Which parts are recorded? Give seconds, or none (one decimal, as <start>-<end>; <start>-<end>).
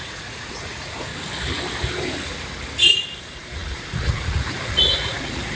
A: 1.1-3.2